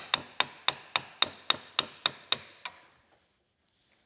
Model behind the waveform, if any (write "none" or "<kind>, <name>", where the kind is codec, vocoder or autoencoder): none